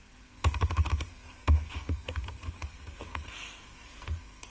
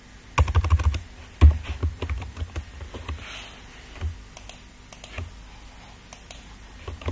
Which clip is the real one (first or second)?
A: second